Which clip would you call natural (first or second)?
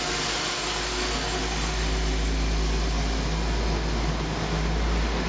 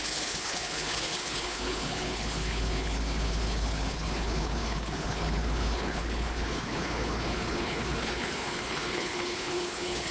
first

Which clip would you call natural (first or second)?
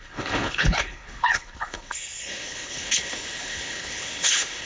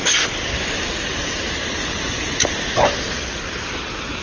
second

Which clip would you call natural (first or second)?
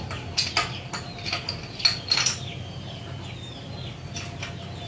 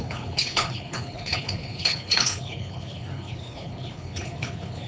first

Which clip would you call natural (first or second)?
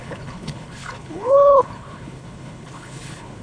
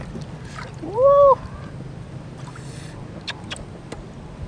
second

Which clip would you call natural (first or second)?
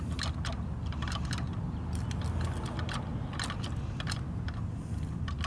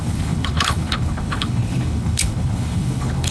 first